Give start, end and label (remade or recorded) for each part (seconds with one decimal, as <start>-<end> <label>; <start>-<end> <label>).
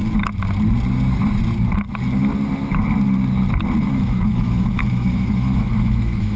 0.0-3.8 recorded; 3.8-6.4 remade